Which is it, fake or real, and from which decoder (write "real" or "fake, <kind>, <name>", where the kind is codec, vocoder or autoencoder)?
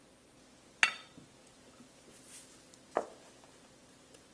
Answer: real